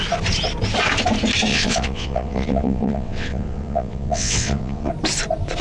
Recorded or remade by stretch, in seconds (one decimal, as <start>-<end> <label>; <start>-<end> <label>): 0.0-1.5 recorded; 1.5-4.9 remade; 4.9-5.6 recorded